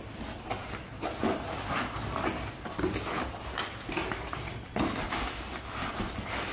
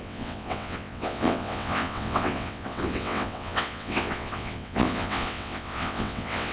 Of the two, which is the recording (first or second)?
first